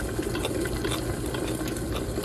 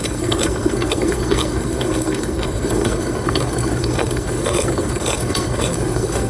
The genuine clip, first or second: first